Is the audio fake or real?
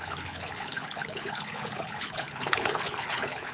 fake